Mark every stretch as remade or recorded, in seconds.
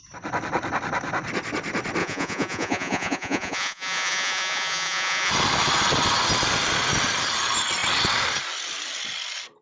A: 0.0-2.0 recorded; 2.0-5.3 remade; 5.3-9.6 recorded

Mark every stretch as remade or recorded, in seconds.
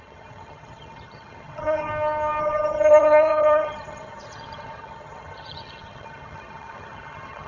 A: 0.0-1.9 remade; 1.9-2.4 recorded; 2.4-7.5 remade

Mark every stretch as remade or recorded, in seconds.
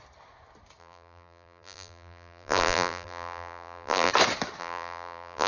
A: 0.0-0.8 recorded; 0.8-4.1 remade; 4.1-4.6 recorded; 4.6-5.5 remade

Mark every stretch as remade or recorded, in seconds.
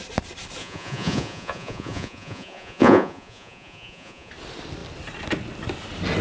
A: 0.0-0.6 recorded; 0.6-4.3 remade; 4.3-6.2 recorded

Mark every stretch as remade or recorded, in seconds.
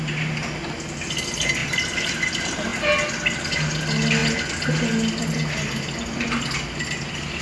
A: 0.0-1.6 recorded; 1.6-2.1 remade; 2.1-7.4 recorded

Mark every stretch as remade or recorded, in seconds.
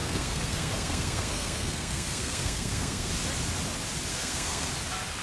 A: 0.0-3.1 remade; 3.1-4.1 recorded; 4.1-4.7 remade; 4.7-5.2 recorded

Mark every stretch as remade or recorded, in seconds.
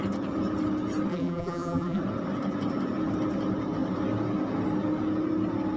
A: 0.0-1.1 recorded; 1.1-2.0 remade; 2.0-5.8 recorded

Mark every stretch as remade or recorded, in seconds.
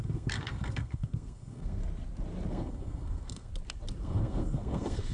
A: 0.0-1.8 remade; 1.8-2.5 recorded; 2.5-3.5 remade; 3.5-4.0 recorded; 4.0-5.1 remade